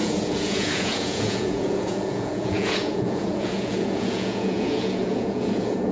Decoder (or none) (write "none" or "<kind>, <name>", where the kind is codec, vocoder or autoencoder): vocoder, Vocos